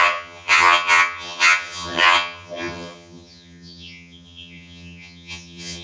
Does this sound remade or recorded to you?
remade